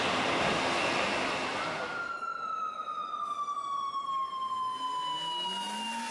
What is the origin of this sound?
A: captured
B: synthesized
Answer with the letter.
A